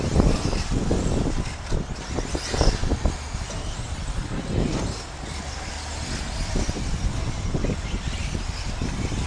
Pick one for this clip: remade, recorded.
recorded